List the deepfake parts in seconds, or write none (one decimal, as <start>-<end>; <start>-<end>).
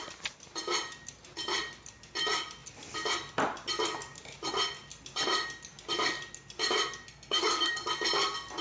7.1-7.7